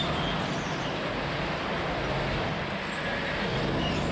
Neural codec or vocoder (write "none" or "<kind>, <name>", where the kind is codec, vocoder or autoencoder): none